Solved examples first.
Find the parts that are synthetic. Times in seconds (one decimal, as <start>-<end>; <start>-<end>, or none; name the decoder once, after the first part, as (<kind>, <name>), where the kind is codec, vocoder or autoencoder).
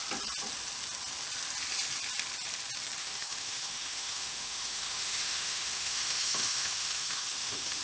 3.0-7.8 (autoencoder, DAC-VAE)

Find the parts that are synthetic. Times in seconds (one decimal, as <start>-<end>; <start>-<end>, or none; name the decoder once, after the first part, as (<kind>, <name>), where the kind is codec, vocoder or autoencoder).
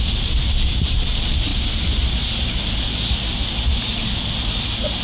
none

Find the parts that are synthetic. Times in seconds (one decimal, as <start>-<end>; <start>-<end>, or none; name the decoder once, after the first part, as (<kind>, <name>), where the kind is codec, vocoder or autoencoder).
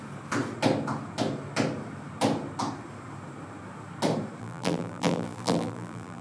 4.4-6.2 (vocoder, BigVGAN v2)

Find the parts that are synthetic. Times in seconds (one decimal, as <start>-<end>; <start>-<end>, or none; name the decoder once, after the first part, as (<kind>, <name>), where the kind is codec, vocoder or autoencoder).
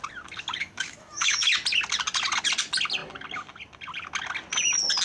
0.6-1.5 (autoencoder, DAC-VAE)